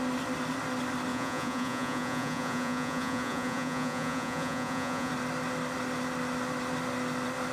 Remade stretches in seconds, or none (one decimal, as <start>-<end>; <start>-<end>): 1.1-5.1

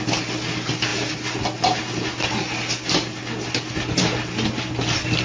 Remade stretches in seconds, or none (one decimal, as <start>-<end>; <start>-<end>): none

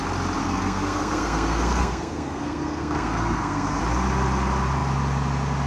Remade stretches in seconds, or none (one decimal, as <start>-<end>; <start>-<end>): 0.4-3.8

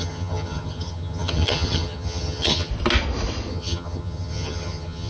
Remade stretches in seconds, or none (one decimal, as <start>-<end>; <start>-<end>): 0.0-2.7; 3.5-5.1

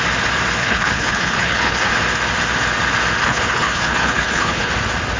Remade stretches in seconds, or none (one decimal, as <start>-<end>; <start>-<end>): 0.6-1.9; 3.2-4.7